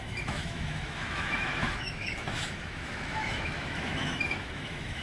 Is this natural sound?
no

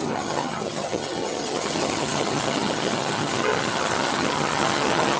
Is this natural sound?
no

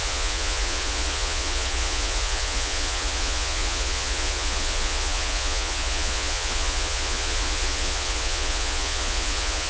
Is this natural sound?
no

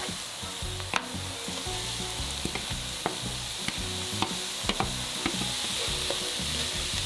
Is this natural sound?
yes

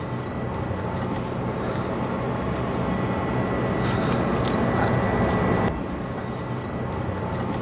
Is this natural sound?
yes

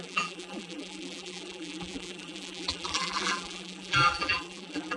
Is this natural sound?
no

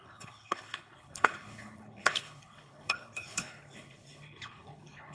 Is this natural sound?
no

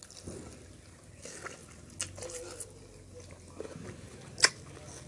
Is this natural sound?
yes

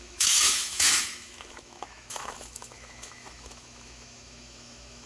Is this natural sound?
no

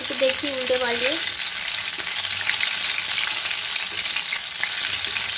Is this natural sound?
yes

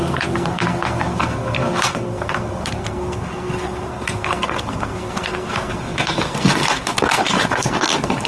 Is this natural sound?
no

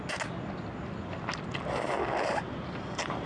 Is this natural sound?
yes